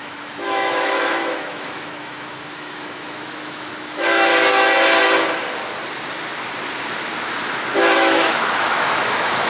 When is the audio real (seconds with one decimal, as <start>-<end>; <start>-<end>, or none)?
4.3-7.8